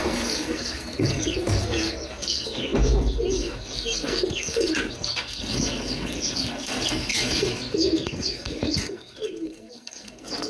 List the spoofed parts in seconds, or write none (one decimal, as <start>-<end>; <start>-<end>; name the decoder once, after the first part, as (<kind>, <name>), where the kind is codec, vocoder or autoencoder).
0.0-10.5 (codec, SNAC)